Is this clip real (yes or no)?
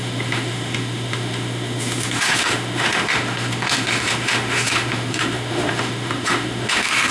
no